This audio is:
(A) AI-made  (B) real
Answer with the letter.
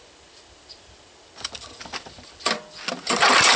B